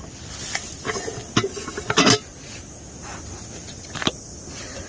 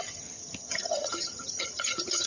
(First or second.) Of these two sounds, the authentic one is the first